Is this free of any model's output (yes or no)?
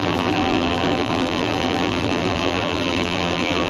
no